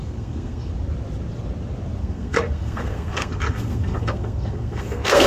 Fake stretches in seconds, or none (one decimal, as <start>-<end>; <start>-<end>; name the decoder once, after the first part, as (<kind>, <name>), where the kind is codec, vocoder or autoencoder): 0.0-0.7 (codec, SNAC); 2.0-5.3